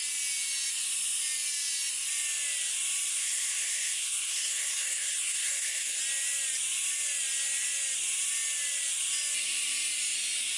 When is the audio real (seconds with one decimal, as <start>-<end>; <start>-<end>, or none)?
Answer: 0.0-3.1; 6.0-10.6